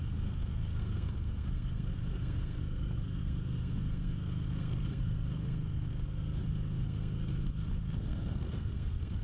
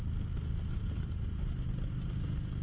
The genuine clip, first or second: second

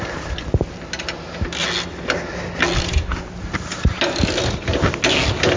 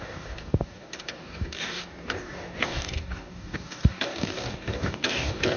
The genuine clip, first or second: first